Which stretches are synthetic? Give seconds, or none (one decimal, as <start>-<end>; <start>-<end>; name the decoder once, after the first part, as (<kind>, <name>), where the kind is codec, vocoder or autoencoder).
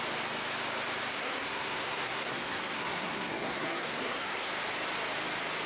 1.1-4.5 (codec, SNAC)